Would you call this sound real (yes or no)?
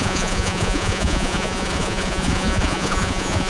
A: no